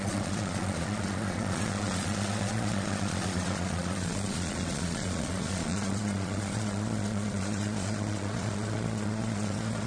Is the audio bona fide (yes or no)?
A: no